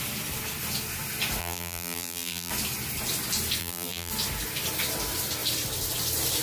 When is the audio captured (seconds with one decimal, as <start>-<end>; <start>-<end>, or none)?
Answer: 0.0-1.4; 2.5-3.6; 4.1-6.4